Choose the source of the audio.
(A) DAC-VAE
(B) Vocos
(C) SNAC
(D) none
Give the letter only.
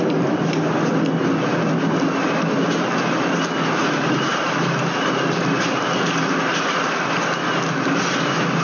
D